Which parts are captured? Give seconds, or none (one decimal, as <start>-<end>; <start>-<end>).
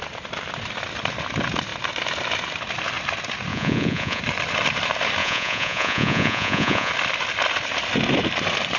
0.0-3.5; 4.2-5.2; 6.9-8.8